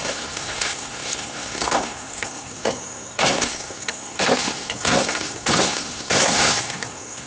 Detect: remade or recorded remade